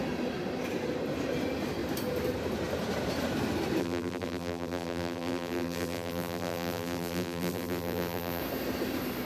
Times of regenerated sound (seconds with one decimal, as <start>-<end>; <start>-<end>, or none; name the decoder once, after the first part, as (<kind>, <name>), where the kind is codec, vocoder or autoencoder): 3.8-8.4 (vocoder, BigVGAN v2)